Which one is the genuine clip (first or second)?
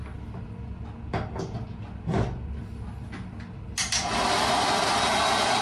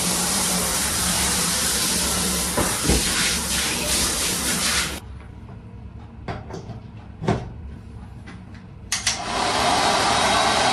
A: first